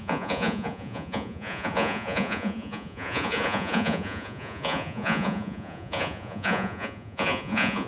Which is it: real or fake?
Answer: fake